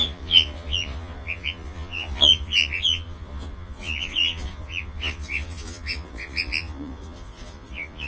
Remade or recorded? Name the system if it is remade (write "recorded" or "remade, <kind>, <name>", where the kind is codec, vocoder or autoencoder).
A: remade, vocoder, Vocos